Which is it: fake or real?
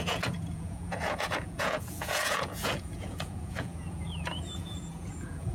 fake